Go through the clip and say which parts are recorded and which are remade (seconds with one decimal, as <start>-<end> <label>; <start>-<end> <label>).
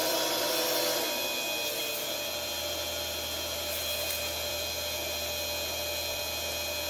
0.0-0.5 remade; 0.5-6.9 recorded